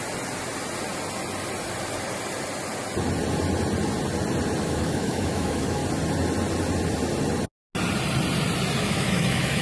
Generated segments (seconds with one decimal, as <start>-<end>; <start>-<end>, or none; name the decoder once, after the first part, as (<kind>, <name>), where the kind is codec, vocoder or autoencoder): 4.6-5.8 (autoencoder, DAC-VAE); 8.8-9.6